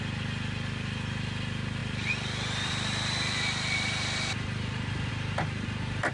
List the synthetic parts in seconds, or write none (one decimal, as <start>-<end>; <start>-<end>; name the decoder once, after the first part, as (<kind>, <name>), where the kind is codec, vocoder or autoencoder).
1.8-5.1 (vocoder, BigVGAN v2)